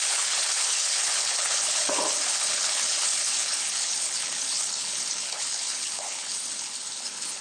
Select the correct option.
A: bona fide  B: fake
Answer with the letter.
B